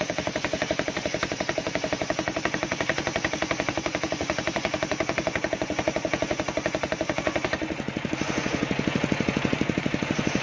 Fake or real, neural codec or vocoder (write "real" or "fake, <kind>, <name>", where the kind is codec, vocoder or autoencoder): fake, vocoder, Vocos